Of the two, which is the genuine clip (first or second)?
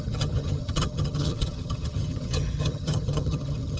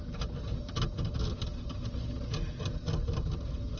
second